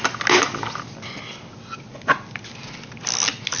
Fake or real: real